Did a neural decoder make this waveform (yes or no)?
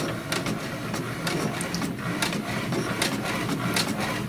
no